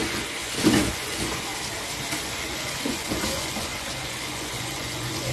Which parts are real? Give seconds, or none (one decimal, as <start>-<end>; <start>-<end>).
1.5-2.2